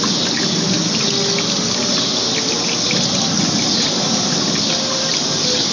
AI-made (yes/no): no